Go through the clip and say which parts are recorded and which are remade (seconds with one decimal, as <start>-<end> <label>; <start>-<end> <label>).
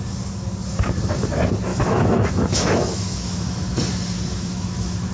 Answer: 0.0-1.7 recorded; 1.7-3.8 remade; 3.8-4.3 recorded; 4.3-5.1 remade